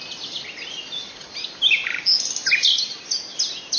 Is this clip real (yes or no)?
yes